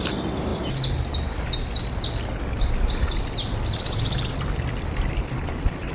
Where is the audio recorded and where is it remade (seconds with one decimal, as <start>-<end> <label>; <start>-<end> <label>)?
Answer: 0.0-5.9 recorded